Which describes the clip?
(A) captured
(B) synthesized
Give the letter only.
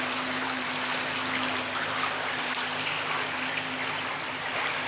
A